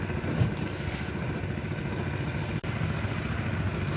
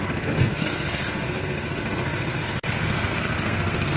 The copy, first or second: second